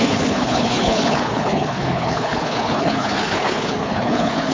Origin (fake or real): fake